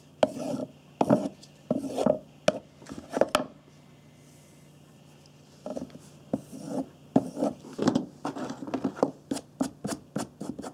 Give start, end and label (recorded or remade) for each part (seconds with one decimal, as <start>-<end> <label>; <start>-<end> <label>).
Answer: 0.0-10.7 recorded